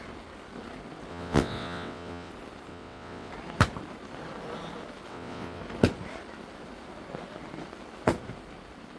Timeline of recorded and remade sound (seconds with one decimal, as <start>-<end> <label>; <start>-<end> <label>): 0.0-1.1 recorded; 1.1-2.3 remade; 2.3-2.7 recorded; 2.7-3.3 remade; 3.3-5.1 recorded; 5.1-5.6 remade; 5.6-9.0 recorded